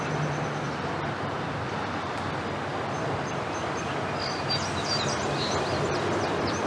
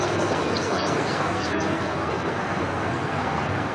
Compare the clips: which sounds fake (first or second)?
second